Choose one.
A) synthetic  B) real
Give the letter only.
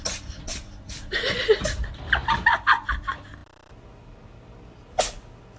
B